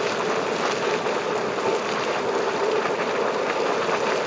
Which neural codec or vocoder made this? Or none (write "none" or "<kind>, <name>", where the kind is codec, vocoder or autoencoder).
none